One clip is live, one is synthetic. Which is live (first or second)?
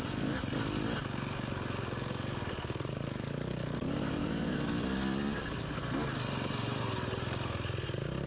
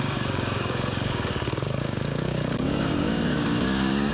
first